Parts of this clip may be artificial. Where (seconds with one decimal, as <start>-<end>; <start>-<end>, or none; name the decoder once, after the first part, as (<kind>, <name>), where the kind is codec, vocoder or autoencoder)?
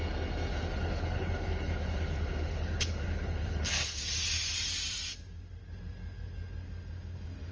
0.5-4.0 (codec, HILCodec)